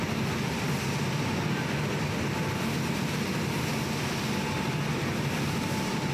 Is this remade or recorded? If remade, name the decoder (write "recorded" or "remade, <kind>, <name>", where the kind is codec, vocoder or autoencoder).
recorded